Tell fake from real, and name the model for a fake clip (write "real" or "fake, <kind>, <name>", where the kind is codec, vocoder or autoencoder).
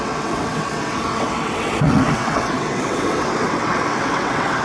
fake, vocoder, WaveNeXt